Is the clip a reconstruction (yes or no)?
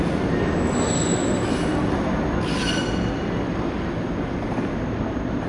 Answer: no